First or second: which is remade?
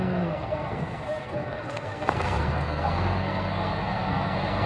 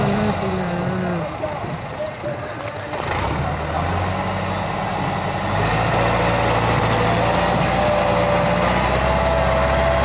first